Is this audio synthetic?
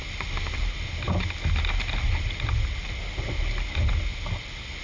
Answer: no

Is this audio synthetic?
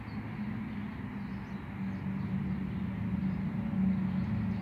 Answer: no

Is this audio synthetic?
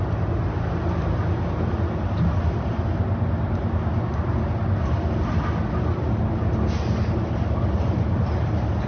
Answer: no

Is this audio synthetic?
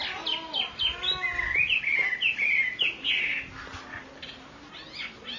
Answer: no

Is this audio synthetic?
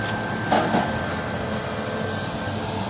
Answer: no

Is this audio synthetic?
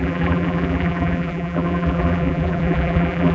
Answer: yes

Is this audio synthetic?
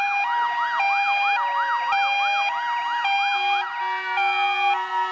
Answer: no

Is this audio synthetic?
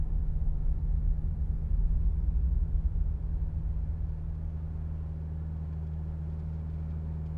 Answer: no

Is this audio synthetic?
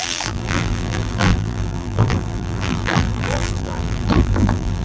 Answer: yes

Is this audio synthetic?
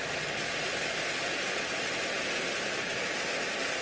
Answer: no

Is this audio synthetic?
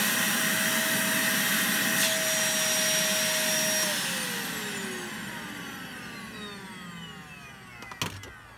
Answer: no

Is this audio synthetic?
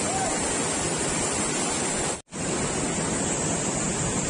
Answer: no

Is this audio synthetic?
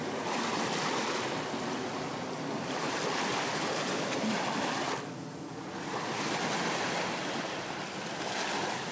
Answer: no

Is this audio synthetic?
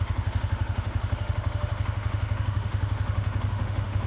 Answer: yes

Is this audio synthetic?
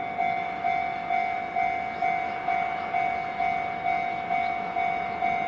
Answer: yes